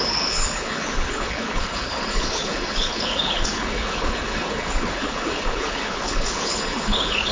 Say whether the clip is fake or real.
fake